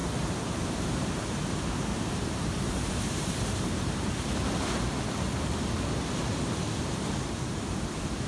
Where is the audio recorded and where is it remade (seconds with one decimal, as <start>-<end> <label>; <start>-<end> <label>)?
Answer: 0.0-4.4 remade; 4.4-8.3 recorded